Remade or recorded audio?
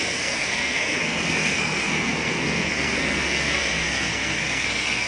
remade